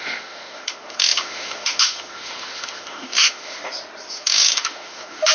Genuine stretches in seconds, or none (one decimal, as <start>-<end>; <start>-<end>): 3.6-4.1